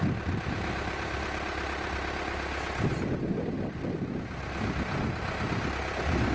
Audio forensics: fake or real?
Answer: real